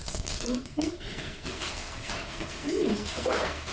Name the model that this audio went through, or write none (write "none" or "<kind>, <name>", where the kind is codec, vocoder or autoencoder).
codec, SNAC